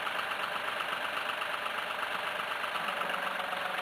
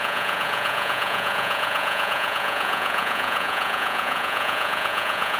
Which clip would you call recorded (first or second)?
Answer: first